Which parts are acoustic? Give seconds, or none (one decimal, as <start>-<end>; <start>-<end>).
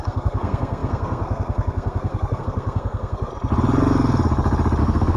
3.3-4.8